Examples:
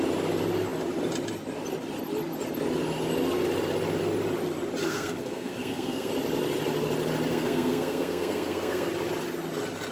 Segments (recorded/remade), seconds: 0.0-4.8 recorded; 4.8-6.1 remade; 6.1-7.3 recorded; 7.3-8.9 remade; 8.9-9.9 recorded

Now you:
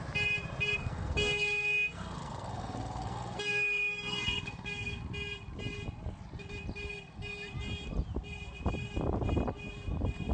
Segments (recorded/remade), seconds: 0.0-0.8 recorded; 0.8-5.0 remade; 5.0-10.3 recorded

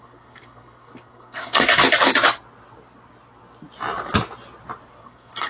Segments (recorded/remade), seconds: 0.0-1.7 remade; 1.7-5.0 recorded; 5.0-5.5 remade

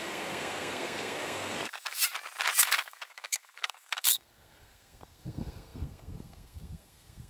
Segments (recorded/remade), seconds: 0.0-2.0 remade; 2.0-2.6 recorded; 2.6-7.3 remade